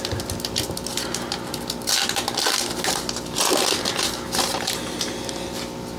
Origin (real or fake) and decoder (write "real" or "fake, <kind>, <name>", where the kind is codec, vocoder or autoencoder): real